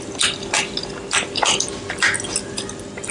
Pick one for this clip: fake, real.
real